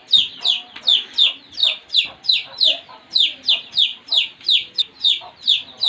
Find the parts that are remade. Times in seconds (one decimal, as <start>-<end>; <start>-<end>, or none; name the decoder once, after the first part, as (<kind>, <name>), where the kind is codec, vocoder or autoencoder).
0.0-0.8 (vocoder, BigVGAN v2); 1.6-3.5; 3.9-4.7